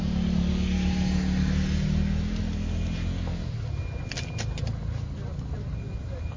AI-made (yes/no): no